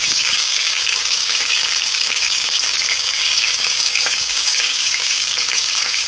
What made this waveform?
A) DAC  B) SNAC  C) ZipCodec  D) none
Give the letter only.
A